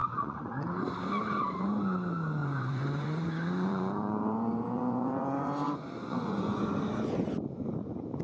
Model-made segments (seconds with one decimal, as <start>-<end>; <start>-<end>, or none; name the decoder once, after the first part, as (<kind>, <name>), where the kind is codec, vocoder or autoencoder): 0.0-0.7 (vocoder, Vocos); 2.4-6.6